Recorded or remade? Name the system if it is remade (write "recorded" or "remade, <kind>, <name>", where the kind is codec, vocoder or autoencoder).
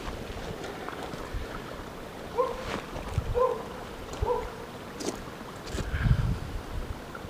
recorded